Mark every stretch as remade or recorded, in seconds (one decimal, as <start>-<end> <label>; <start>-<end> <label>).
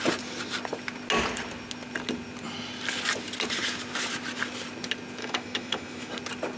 0.0-5.2 recorded; 5.2-6.1 remade; 6.1-6.6 recorded